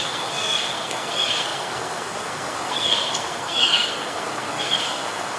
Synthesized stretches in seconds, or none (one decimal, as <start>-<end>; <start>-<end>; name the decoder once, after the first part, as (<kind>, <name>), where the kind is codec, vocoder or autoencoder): 0.0-5.4 (codec, SNAC)